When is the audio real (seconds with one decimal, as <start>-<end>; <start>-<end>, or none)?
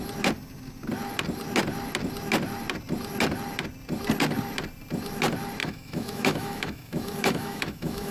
0.0-5.6